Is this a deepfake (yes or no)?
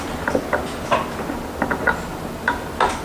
no